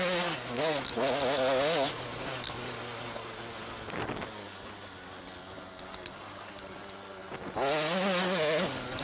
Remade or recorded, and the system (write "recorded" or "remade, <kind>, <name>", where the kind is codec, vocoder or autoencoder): recorded